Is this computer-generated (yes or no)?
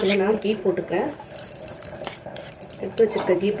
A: yes